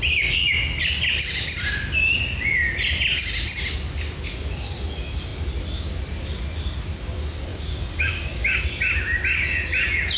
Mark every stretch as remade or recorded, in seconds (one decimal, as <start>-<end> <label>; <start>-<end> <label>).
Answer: 0.0-7.5 recorded; 7.5-8.6 remade; 8.6-10.2 recorded

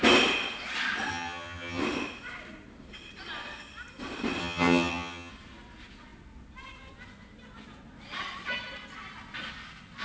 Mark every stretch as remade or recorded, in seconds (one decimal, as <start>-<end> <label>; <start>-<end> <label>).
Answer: 0.0-1.1 recorded; 1.1-1.8 remade; 1.8-4.4 recorded; 4.4-5.3 remade; 5.3-10.0 recorded

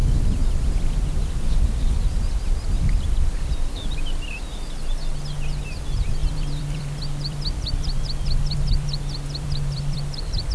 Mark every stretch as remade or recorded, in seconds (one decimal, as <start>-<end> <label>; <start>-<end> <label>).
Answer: 0.0-1.2 remade; 1.2-3.7 recorded; 3.7-4.4 remade; 4.4-6.2 recorded; 6.2-10.5 remade

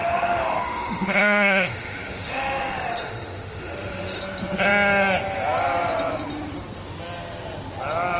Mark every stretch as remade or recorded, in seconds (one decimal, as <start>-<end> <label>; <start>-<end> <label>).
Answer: 0.0-4.2 remade; 4.2-8.2 recorded

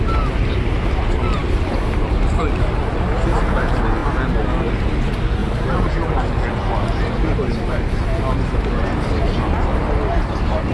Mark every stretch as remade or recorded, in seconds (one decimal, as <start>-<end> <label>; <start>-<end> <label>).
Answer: 0.0-10.7 recorded

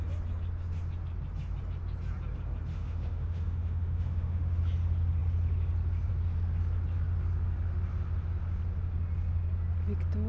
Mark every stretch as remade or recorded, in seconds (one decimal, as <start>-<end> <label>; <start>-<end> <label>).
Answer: 0.0-2.7 recorded; 2.7-4.6 remade; 4.6-10.3 recorded

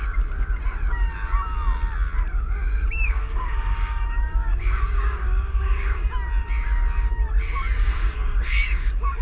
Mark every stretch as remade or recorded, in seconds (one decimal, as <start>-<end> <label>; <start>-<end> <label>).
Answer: 0.0-2.3 recorded; 2.3-6.1 remade; 6.1-7.8 recorded; 7.8-9.2 remade

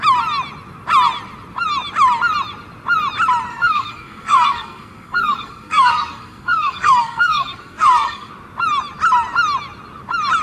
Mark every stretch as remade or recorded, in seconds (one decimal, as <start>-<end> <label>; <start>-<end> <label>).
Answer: 0.0-3.5 recorded; 3.5-8.3 remade; 8.3-10.4 recorded